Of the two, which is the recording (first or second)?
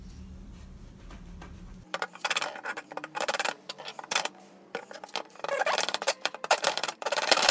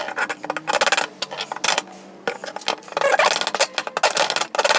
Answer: second